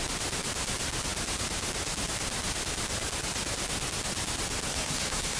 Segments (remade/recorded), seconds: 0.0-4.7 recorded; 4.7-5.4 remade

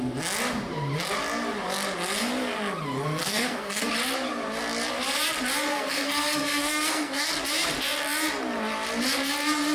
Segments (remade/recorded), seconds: 0.0-3.2 recorded; 3.2-3.9 remade; 3.9-5.7 recorded; 5.7-7.3 remade; 7.3-9.7 recorded